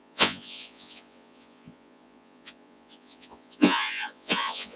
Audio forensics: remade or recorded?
remade